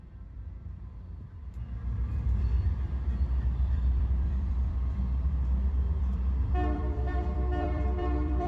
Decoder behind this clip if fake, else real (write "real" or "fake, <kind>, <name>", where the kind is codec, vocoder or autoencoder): fake, vocoder, BigVGAN v2